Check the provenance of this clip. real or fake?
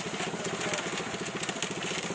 real